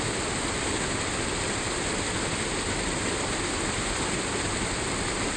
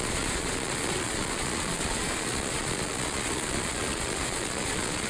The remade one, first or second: second